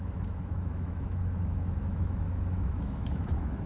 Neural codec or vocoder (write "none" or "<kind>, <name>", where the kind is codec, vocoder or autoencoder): autoencoder, DAC-VAE